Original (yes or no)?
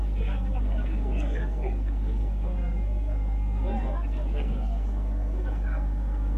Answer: no